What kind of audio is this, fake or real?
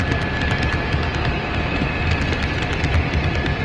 real